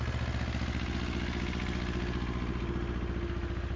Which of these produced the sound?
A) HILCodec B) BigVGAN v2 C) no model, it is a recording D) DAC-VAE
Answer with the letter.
C